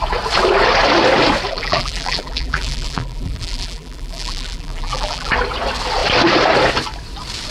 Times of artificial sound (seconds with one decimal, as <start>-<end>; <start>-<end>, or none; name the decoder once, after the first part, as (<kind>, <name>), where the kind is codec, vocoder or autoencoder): 1.5-5.3 (vocoder, BigVGAN v2)